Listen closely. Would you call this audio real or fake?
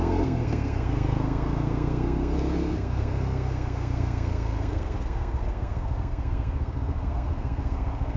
fake